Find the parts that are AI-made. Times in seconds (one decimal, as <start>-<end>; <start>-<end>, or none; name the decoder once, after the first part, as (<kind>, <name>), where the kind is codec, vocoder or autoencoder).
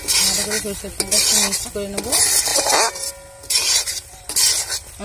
2.5-3.1 (vocoder, BigVGAN v2)